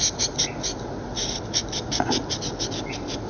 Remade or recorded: recorded